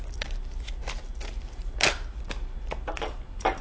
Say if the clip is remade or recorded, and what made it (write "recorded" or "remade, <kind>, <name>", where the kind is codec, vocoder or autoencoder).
recorded